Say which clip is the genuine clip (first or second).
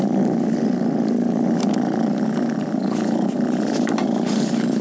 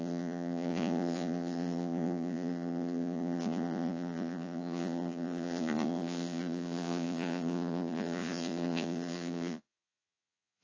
first